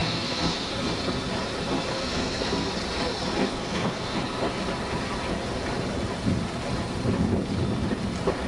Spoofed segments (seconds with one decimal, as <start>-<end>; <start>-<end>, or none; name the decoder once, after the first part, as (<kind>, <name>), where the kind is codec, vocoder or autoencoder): 0.0-0.7 (codec, SNAC); 1.9-2.7; 3.4-4.2